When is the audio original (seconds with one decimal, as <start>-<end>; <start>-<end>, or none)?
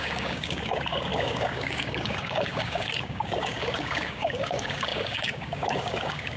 none